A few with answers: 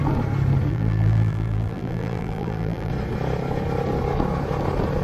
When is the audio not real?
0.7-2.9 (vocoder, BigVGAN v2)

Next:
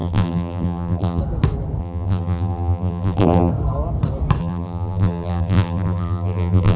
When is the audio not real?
0.0-1.2 (vocoder, BigVGAN v2); 1.8-3.5; 4.4-6.8

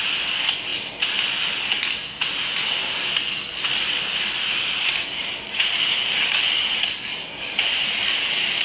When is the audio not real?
none

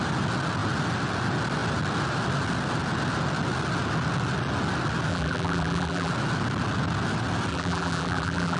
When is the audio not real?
5.1-6.1 (vocoder, BigVGAN v2); 7.5-8.6

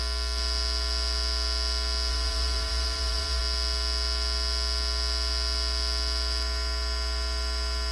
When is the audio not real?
2.1-3.4 (vocoder, BigVGAN v2)

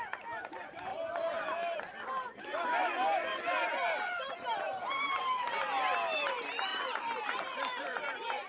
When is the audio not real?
0.9-1.8 (vocoder, BigVGAN v2); 3.3-5.1; 6.7-8.5

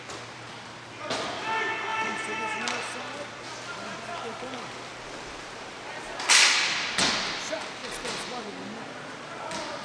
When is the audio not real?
1.9-6.2 (vocoder, BigVGAN v2); 7.8-8.4

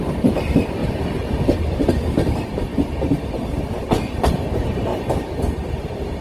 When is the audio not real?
0.0-2.7 (vocoder, BigVGAN v2); 4.4-4.9